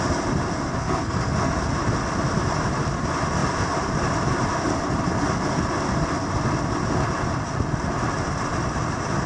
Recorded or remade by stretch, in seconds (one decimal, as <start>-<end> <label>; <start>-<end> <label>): 0.0-0.8 recorded; 0.8-1.5 remade; 1.5-9.3 recorded